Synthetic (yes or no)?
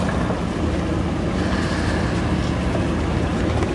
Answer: no